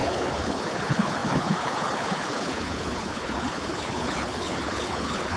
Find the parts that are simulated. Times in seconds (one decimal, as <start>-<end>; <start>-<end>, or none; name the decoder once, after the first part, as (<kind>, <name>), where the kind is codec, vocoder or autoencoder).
0.0-5.4 (codec, HILCodec)